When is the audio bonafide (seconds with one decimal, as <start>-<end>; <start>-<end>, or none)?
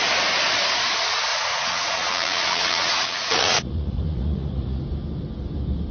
0.0-1.3; 4.8-5.9